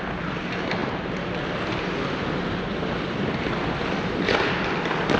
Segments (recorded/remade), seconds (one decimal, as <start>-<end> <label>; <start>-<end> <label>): 0.0-5.2 recorded